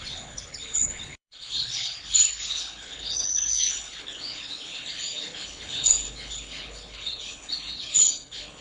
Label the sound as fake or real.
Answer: fake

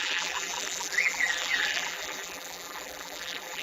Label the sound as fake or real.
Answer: fake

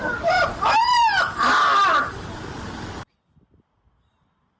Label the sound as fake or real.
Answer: real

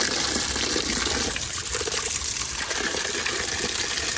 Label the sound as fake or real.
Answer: real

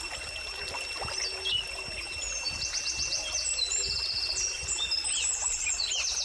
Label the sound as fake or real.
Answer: real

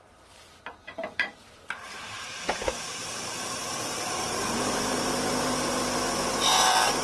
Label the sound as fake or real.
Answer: fake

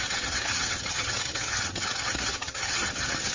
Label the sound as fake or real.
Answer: fake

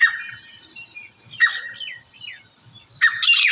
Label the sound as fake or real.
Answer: real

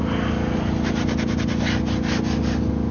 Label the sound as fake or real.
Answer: real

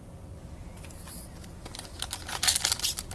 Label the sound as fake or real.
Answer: real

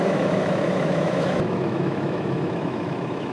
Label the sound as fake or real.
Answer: fake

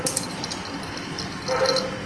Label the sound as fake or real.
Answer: real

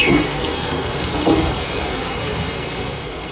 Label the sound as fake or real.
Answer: fake